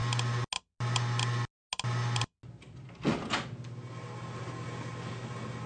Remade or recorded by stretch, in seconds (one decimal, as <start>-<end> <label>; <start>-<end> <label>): 0.0-5.7 recorded

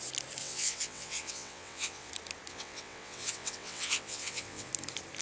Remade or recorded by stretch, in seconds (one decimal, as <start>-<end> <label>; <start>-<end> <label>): 0.0-0.4 recorded; 0.4-2.1 remade; 2.1-2.5 recorded; 2.5-4.7 remade; 4.7-5.2 recorded

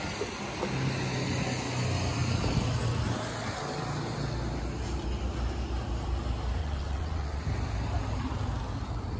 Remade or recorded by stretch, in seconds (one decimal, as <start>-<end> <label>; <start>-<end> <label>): 0.0-6.6 recorded; 6.6-7.4 remade; 7.4-9.2 recorded

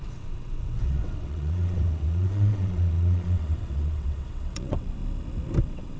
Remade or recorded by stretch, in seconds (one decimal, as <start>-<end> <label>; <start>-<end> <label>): 0.0-5.0 remade; 5.0-5.6 recorded; 5.6-6.0 remade

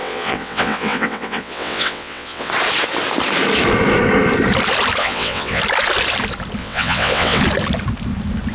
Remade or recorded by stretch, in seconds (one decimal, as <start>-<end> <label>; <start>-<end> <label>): 0.0-2.5 remade; 2.5-5.0 recorded; 5.0-5.6 remade; 5.6-6.6 recorded; 6.6-7.4 remade; 7.4-8.5 recorded